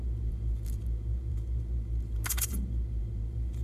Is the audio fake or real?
fake